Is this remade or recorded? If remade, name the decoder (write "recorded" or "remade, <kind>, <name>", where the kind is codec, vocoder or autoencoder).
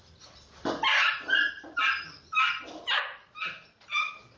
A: recorded